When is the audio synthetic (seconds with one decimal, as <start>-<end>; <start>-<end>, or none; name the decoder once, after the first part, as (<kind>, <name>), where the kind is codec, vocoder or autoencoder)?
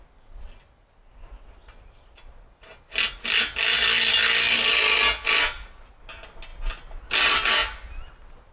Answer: none